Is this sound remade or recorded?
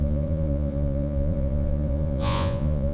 remade